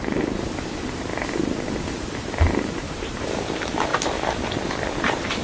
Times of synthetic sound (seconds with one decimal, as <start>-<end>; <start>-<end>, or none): 0.0-1.1; 1.9-3.9; 4.5-5.4